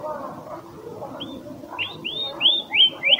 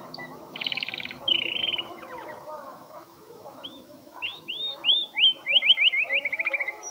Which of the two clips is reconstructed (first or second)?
second